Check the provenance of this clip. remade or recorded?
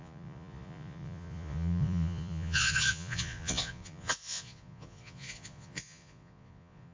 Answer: remade